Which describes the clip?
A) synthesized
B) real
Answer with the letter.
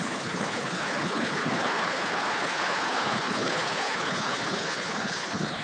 A